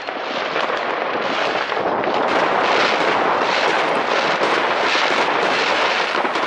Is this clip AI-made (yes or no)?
no